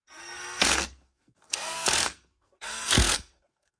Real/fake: fake